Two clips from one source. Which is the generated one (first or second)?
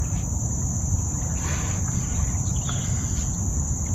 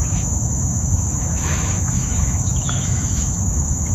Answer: second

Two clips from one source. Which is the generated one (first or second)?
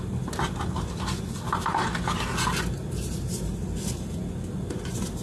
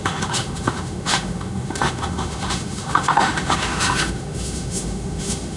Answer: second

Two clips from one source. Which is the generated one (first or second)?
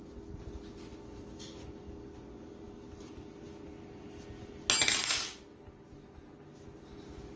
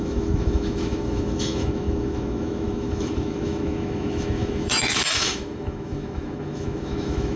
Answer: second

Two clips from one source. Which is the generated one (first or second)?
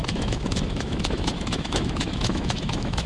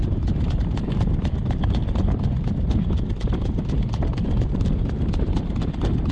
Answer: first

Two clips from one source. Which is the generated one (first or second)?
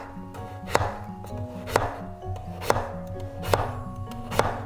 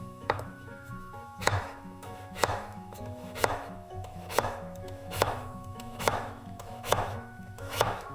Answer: second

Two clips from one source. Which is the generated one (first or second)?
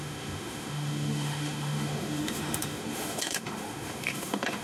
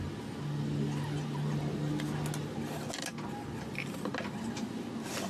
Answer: first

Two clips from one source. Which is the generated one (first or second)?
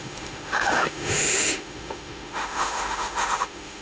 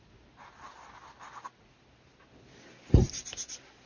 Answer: first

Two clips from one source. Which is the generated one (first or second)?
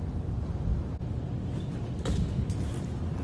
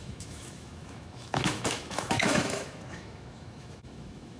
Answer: second